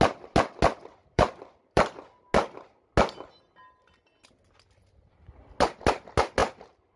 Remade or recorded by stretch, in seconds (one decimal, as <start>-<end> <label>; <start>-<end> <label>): 0.0-1.0 recorded; 1.0-1.9 remade; 1.9-6.4 recorded; 6.4-7.0 remade

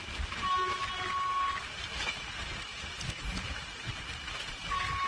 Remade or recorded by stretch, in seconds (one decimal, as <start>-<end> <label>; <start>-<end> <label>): 0.0-5.1 recorded

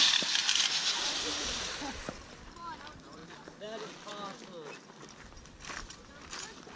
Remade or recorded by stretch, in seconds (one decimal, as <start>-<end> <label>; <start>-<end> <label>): 0.0-3.2 remade; 3.2-4.8 recorded; 4.8-6.8 remade

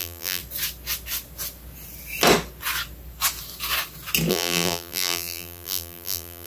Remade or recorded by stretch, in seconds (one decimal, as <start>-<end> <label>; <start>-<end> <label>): 0.0-0.4 remade; 0.4-4.3 recorded; 4.3-6.5 remade

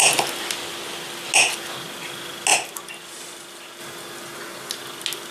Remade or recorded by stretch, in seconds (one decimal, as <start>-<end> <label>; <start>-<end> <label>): 0.0-5.3 recorded

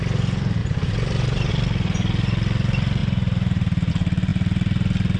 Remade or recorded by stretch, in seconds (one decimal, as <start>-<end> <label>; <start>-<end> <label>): 0.0-0.6 recorded; 0.6-1.5 remade; 1.5-3.0 recorded; 3.0-3.9 remade; 3.9-5.2 recorded

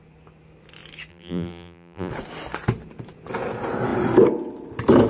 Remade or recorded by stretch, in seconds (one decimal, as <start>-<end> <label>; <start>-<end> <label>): 0.0-1.1 recorded; 1.1-2.1 remade; 2.1-5.1 recorded

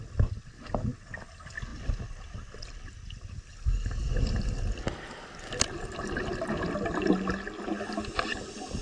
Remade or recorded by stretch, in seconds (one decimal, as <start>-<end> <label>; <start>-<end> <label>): 0.0-8.8 recorded